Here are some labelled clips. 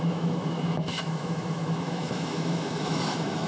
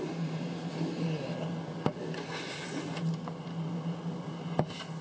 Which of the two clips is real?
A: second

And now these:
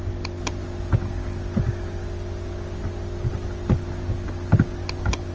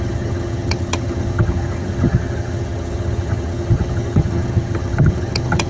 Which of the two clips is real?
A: first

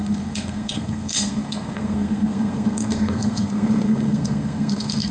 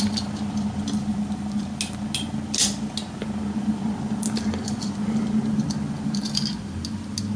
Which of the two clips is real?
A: second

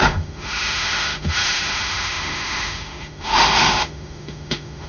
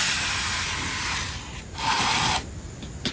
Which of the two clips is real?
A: second